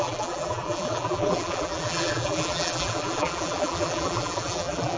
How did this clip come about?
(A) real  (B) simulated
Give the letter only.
B